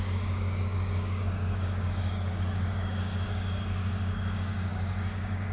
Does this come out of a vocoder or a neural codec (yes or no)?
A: yes